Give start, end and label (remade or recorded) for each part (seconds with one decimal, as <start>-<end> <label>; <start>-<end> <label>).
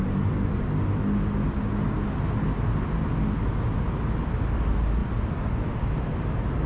0.0-6.7 recorded